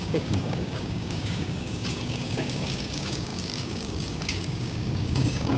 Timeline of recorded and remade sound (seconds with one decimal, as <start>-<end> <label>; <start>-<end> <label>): 0.0-5.6 remade